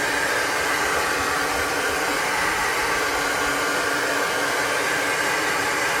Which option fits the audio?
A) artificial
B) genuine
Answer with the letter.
B